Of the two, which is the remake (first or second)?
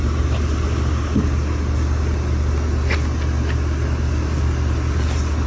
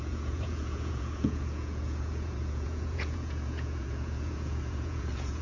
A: second